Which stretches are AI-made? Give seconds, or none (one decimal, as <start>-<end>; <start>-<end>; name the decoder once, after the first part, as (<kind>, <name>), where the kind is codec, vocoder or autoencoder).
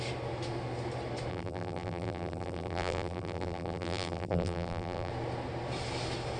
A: 1.3-5.1 (vocoder, BigVGAN v2)